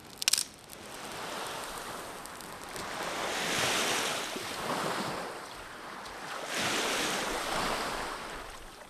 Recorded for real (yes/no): yes